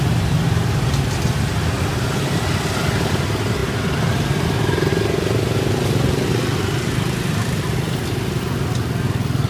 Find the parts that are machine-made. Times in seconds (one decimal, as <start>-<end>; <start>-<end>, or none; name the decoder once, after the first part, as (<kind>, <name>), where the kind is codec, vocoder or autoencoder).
none